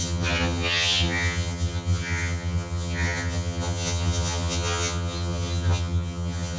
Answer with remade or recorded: remade